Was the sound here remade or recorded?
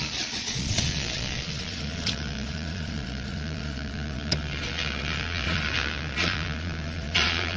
remade